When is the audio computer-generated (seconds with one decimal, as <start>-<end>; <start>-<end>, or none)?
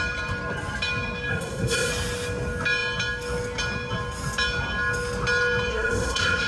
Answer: 1.3-1.9; 5.7-6.5